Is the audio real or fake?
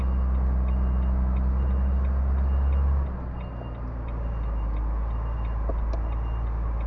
real